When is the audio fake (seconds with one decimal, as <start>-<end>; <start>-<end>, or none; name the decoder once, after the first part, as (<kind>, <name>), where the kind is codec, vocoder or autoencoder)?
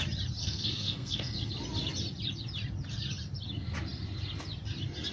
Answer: 0.4-1.5 (codec, SNAC)